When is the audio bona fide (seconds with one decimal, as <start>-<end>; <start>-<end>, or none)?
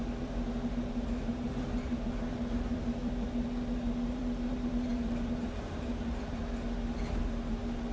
6.4-7.2